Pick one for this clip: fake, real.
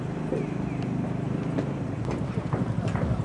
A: real